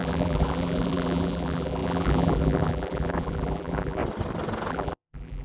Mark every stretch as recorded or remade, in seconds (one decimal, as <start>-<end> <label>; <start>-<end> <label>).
0.0-4.0 remade; 4.0-4.7 recorded; 4.7-5.4 remade